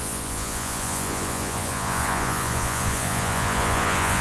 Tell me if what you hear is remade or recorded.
remade